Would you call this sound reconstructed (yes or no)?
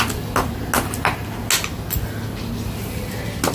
no